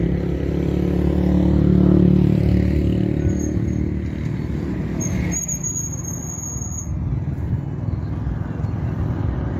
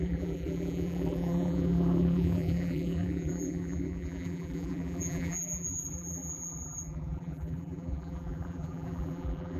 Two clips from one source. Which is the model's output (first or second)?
second